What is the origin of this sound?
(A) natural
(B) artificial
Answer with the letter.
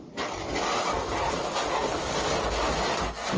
A